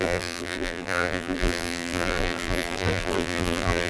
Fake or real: fake